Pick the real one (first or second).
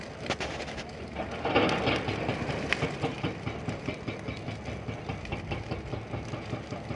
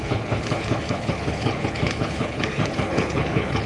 first